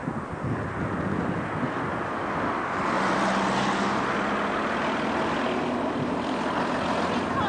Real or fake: real